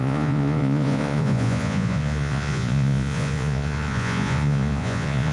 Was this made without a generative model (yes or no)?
no